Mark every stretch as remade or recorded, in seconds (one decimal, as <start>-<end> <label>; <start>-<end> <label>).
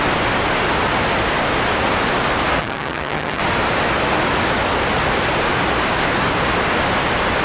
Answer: 0.0-2.6 recorded; 2.6-3.4 remade; 3.4-7.4 recorded